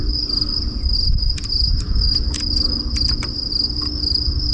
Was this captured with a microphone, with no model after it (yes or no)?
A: yes